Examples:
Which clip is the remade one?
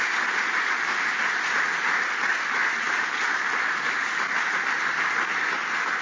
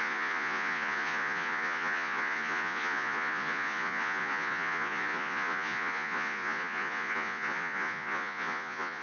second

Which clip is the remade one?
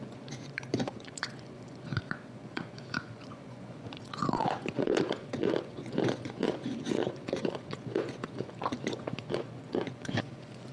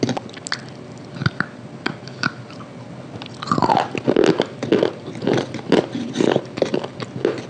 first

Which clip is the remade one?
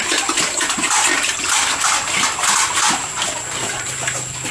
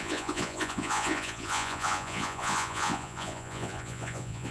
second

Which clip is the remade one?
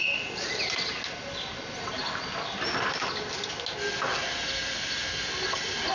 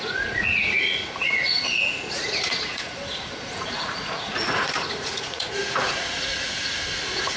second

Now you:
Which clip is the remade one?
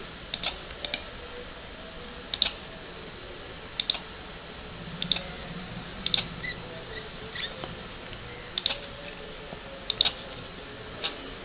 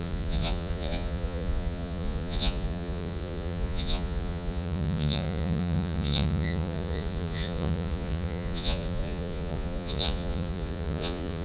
second